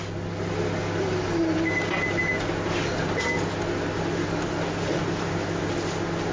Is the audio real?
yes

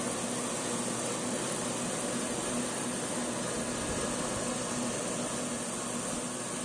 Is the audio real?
yes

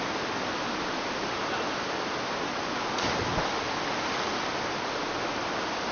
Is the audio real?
yes